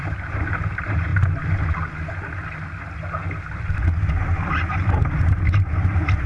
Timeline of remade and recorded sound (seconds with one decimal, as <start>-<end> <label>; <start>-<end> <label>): 0.0-1.1 remade; 1.1-4.7 recorded; 4.7-6.3 remade